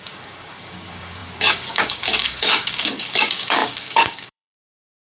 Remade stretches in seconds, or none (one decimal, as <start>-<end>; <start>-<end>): 0.0-5.1

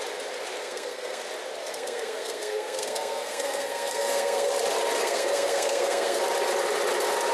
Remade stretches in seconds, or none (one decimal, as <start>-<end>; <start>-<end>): 0.6-1.2; 1.6-4.5; 5.0-6.2

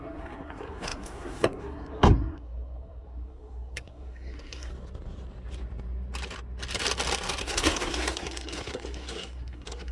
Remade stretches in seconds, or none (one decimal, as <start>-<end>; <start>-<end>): 0.0-4.7; 7.4-9.9